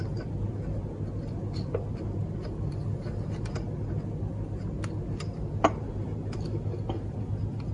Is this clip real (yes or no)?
yes